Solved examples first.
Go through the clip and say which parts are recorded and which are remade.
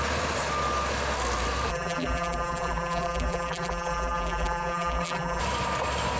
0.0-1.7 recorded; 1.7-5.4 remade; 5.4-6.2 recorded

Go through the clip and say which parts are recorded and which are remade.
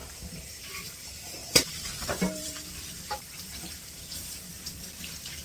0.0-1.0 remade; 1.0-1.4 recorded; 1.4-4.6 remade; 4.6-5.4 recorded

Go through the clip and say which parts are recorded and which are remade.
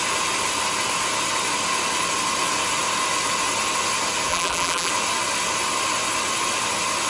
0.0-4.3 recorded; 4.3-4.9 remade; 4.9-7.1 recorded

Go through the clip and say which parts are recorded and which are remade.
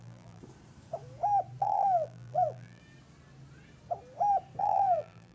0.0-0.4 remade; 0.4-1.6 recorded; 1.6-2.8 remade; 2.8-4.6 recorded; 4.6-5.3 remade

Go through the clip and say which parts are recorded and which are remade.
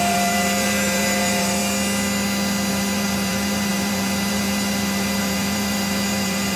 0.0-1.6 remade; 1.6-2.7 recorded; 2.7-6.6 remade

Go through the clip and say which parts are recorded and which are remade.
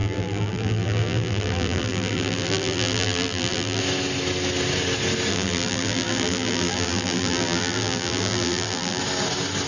0.0-3.8 remade; 3.8-5.3 recorded; 5.3-9.0 remade; 9.0-9.7 recorded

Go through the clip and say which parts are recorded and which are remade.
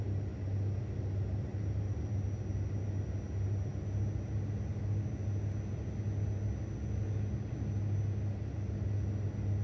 0.0-1.5 recorded; 1.5-2.1 remade; 2.1-9.6 recorded